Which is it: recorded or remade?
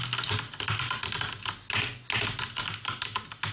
recorded